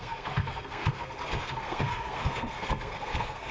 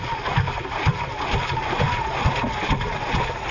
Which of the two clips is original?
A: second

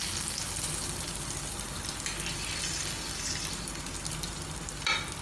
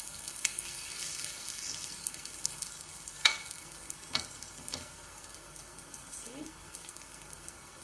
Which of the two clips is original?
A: first